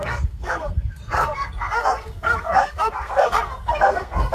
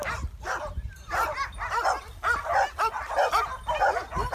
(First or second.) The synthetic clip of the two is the first